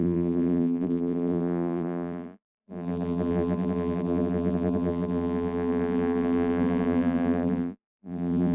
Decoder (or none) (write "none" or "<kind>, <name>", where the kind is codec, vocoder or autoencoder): vocoder, BigVGAN v2